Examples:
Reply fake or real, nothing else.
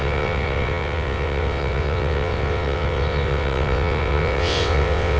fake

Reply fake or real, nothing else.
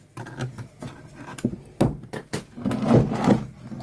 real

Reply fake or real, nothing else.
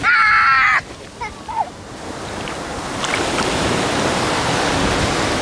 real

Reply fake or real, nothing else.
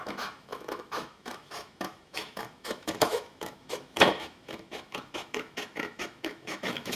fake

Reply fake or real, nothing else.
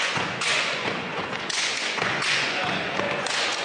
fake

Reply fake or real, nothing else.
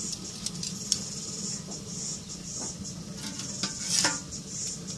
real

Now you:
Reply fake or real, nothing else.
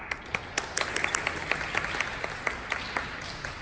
real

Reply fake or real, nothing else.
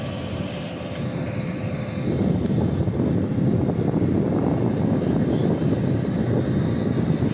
real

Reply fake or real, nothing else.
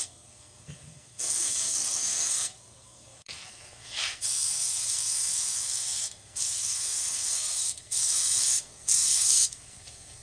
fake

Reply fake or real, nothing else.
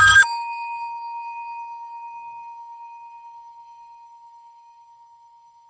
fake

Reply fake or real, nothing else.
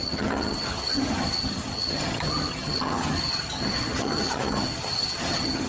fake